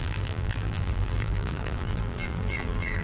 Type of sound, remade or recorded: remade